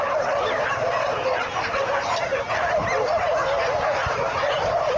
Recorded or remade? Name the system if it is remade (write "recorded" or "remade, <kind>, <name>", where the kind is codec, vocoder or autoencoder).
recorded